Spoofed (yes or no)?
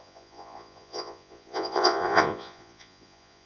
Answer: yes